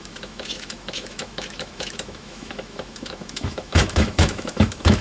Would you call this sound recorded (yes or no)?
no